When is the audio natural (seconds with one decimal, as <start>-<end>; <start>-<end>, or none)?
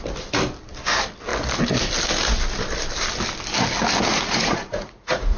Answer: 0.0-4.1